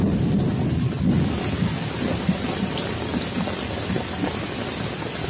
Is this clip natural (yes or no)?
yes